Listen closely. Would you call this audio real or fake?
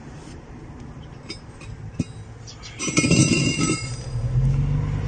real